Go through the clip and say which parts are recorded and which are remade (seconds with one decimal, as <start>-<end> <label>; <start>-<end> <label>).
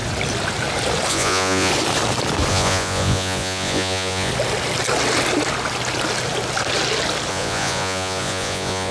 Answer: 0.0-1.1 recorded; 1.1-1.7 remade; 1.7-2.5 recorded; 2.5-4.3 remade; 4.3-7.3 recorded; 7.3-8.9 remade